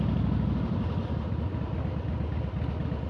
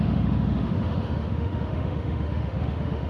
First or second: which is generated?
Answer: second